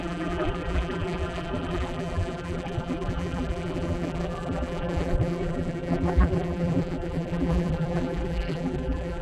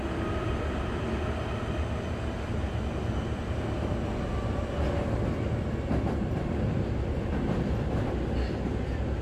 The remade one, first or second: first